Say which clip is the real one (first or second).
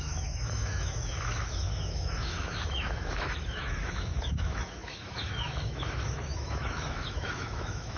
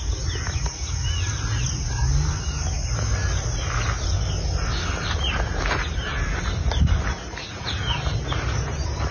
second